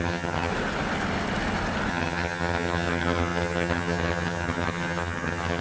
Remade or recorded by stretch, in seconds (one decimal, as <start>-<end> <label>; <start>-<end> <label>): 0.0-0.5 remade; 0.5-1.9 recorded; 1.9-5.6 remade

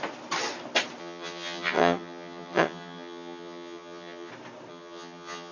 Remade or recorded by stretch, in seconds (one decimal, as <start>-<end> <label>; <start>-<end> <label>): 0.0-1.0 recorded; 1.0-4.3 remade; 4.3-4.7 recorded; 4.7-5.5 remade

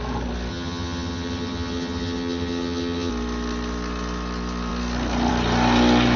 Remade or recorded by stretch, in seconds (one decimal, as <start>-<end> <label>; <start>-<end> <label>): 0.0-0.5 recorded; 0.5-3.1 remade; 3.1-6.2 recorded

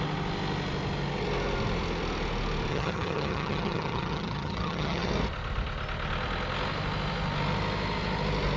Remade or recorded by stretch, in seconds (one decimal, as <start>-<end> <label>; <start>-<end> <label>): 0.0-2.7 recorded; 2.7-5.1 remade; 5.1-8.6 recorded

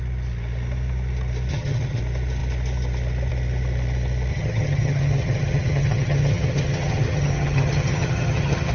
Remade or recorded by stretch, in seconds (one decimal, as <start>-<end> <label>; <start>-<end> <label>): 0.0-1.5 recorded; 1.5-2.0 remade; 2.0-4.3 recorded; 4.3-8.7 remade

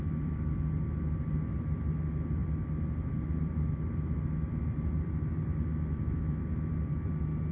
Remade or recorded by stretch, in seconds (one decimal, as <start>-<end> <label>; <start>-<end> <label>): 0.0-7.5 recorded